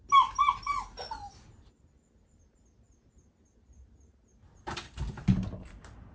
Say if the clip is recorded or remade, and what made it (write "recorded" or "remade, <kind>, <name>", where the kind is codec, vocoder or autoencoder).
recorded